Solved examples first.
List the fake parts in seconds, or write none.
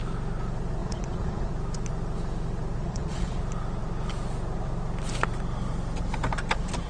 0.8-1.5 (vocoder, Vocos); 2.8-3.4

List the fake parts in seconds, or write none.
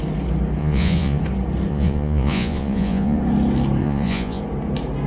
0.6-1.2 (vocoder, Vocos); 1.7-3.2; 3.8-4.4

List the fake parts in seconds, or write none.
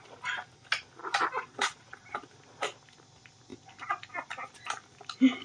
1.0-1.8 (vocoder, Vocos)